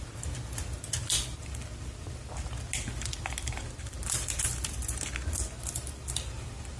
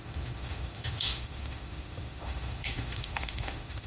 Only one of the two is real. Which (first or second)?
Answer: first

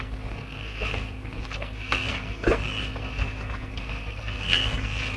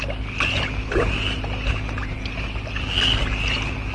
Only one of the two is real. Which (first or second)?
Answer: second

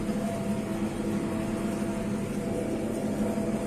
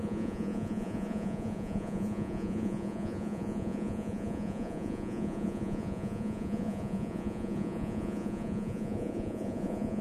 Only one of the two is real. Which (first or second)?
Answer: first